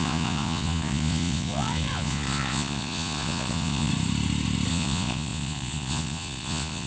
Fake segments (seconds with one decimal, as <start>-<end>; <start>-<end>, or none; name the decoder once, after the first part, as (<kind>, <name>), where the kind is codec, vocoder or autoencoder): 0.0-3.9 (vocoder, Vocos); 4.7-6.9